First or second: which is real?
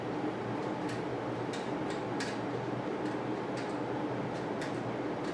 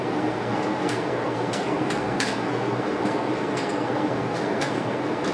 first